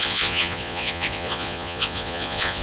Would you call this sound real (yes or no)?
no